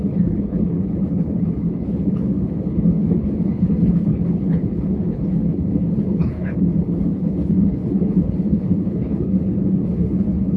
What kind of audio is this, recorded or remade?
remade